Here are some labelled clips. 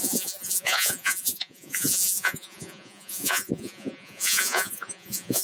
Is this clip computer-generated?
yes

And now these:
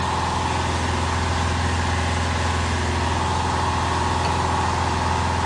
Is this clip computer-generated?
no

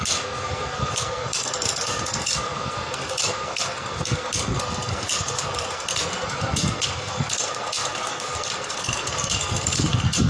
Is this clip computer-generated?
yes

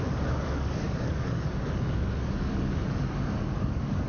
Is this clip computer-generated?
yes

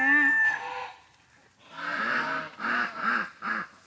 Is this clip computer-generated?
no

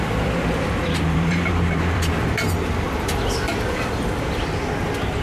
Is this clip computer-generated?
yes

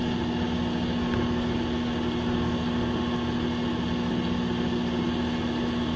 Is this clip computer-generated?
no